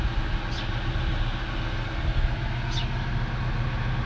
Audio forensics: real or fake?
real